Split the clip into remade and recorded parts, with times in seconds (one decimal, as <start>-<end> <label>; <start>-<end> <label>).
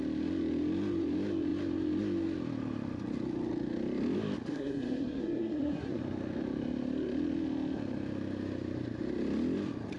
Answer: 0.0-4.5 recorded; 4.5-6.0 remade; 6.0-10.0 recorded